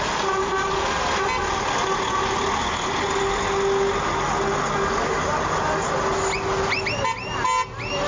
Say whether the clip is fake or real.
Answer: real